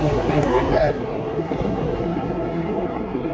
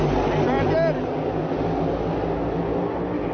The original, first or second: second